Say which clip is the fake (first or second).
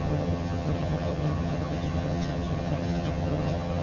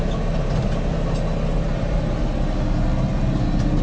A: first